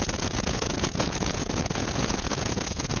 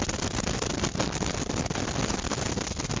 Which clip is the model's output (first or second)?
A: first